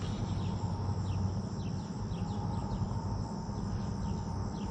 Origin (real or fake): real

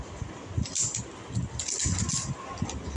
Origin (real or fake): real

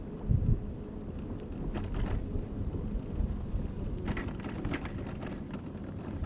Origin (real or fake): real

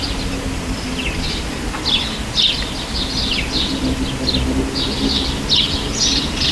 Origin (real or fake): real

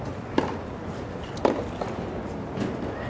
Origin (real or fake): real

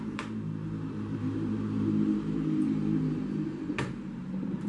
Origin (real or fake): fake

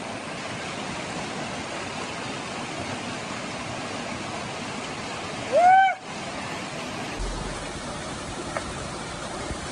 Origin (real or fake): real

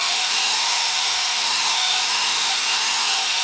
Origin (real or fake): fake